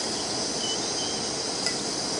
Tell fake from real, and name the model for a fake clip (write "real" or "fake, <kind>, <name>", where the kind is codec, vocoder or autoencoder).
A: real